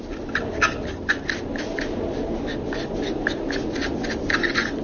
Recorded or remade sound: recorded